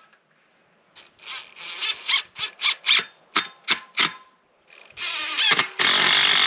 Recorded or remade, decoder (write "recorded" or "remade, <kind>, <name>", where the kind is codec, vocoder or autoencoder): recorded